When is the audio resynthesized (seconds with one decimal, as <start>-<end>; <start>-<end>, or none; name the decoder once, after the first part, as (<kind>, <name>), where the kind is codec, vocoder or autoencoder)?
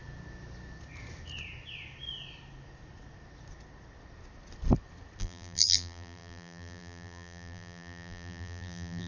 5.2-9.1 (vocoder, BigVGAN v2)